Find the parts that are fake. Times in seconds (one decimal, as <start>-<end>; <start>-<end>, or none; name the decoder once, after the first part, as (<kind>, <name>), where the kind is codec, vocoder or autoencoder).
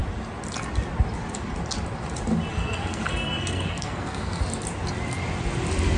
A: 2.5-4.4 (codec, SNAC)